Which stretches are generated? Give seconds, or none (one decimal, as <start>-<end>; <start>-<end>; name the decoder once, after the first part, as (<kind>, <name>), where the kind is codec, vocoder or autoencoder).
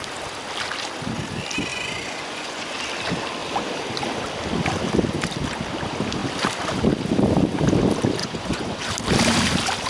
1.7-2.7 (vocoder, Vocos); 8.2-8.8